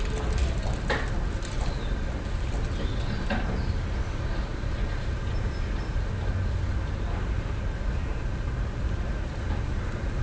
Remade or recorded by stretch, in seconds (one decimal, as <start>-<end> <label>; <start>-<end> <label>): 0.0-10.2 recorded